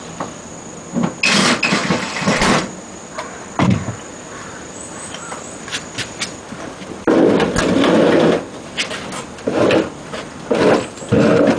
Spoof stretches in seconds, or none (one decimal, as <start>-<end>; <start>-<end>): 1.8-6.4

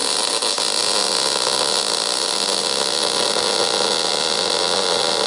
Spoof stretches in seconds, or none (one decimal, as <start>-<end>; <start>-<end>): none

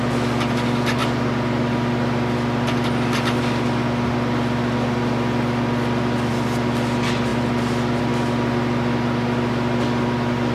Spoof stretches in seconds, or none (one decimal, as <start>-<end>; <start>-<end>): none

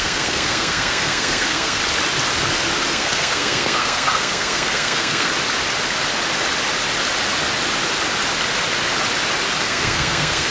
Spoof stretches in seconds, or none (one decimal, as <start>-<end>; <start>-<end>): 0.0-1.8; 2.9-5.3; 9.6-10.5

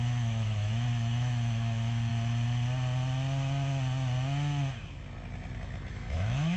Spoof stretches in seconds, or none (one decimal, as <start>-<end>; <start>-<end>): 0.0-2.1; 5.9-6.6

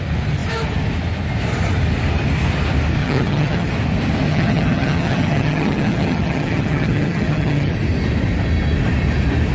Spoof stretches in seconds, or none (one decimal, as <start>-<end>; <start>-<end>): 3.0-3.7; 4.3-7.7